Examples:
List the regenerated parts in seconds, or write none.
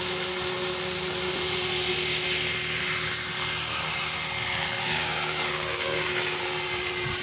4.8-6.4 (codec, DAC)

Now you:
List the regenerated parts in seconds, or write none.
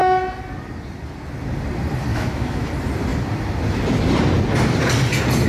2.1-2.7 (autoencoder, DAC-VAE)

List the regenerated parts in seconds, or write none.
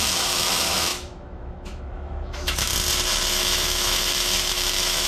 0.0-2.7 (autoencoder, DAC-VAE); 3.3-5.1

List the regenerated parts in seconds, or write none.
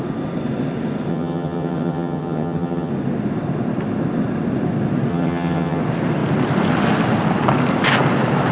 1.1-2.9 (vocoder, HiFi-GAN); 5.1-5.8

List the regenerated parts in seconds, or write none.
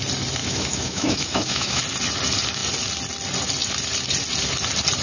0.4-1.8 (autoencoder, DAC-VAE)